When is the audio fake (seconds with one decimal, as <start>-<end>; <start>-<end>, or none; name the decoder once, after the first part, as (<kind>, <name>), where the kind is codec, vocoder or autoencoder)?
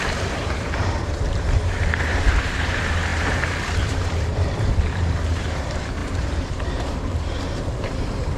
0.0-8.4 (vocoder, BigVGAN v2)